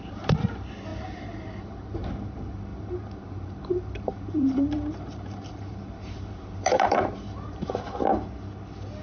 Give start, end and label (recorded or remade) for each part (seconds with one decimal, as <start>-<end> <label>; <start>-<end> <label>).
0.0-0.9 recorded; 0.9-2.1 remade; 2.1-2.7 recorded; 2.7-7.7 remade; 7.7-9.0 recorded

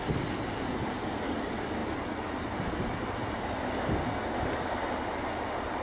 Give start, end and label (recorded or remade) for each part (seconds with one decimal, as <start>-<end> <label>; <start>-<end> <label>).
0.0-5.8 recorded